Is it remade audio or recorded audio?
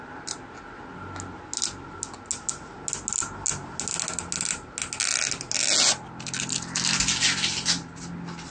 recorded